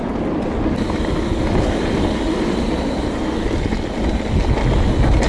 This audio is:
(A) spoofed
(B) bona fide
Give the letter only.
B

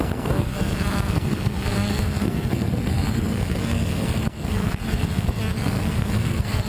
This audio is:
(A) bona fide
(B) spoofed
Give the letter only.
B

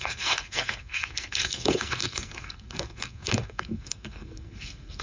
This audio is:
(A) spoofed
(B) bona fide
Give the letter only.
A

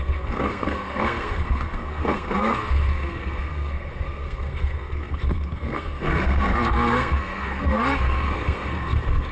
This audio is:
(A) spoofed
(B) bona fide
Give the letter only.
A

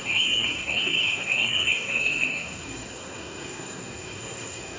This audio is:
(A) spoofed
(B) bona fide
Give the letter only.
A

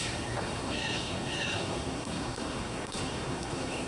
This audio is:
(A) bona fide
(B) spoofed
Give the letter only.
B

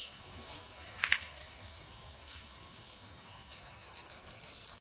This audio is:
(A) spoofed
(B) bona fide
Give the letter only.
A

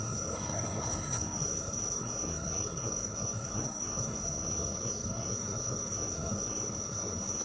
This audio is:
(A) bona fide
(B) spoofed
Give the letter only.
B